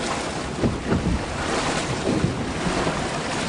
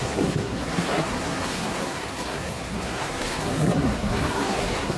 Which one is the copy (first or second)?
second